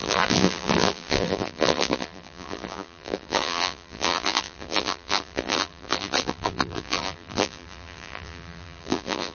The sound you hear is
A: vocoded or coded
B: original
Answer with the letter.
A